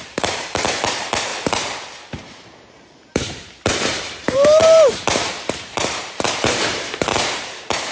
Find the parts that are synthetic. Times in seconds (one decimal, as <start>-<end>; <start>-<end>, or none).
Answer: 0.0-7.9